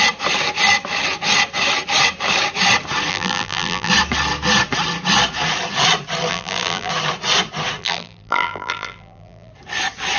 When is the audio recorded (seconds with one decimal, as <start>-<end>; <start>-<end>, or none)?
0.0-3.1; 3.9-6.3; 6.9-7.8; 9.5-10.2